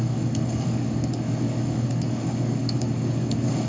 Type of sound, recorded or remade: remade